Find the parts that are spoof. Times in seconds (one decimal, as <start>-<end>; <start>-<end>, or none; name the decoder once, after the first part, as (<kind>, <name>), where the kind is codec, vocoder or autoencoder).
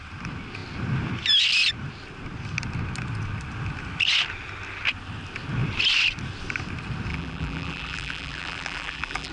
7.1-9.3 (vocoder, BigVGAN v2)